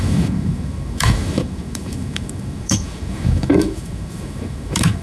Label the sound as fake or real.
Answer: fake